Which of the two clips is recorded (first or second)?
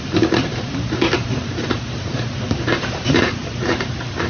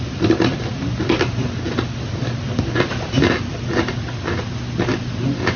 second